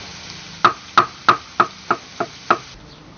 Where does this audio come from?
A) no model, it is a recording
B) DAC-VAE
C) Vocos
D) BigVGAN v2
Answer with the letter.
A